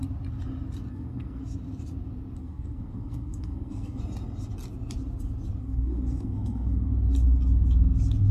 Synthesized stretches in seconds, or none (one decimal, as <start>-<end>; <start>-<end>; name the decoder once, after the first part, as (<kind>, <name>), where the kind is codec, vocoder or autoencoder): 0.9-1.4 (codec, SNAC); 2.4-4.0; 5.6-6.9